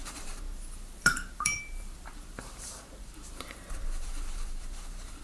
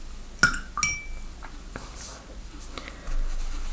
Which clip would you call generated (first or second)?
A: first